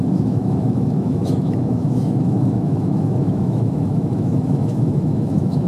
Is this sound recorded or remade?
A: remade